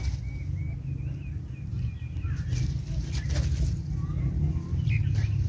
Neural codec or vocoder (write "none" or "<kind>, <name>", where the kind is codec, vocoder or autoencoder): none